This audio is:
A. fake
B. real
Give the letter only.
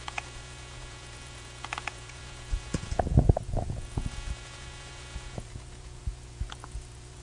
A